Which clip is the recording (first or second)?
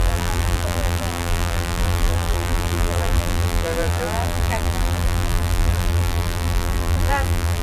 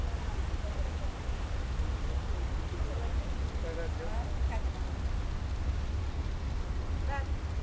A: second